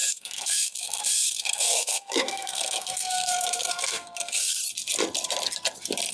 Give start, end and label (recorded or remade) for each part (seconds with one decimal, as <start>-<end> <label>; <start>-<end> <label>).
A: 0.0-4.6 remade; 4.6-6.1 recorded